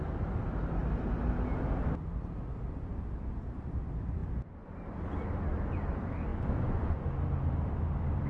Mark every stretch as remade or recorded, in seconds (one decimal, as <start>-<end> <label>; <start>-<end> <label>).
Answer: 0.0-6.3 recorded; 6.3-7.0 remade; 7.0-8.3 recorded